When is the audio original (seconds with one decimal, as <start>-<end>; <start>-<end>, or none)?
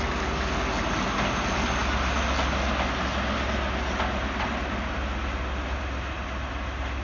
0.0-7.0